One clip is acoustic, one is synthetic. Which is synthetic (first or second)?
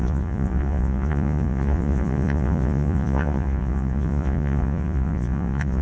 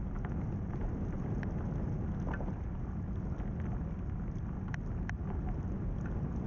first